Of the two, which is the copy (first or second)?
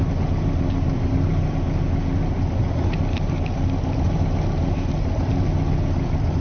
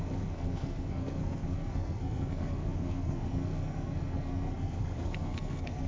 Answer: second